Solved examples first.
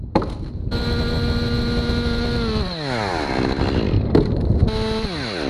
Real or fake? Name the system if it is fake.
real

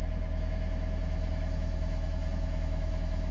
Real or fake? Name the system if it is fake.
fake, autoencoder, DAC-VAE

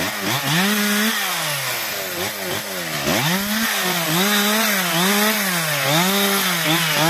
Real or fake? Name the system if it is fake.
real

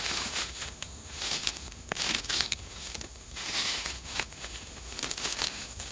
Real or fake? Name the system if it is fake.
fake, autoencoder, DAC-VAE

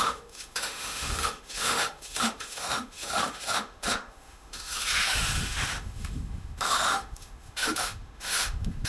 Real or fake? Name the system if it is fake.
fake, autoencoder, DAC-VAE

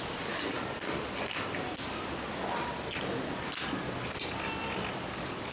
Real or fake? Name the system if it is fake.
real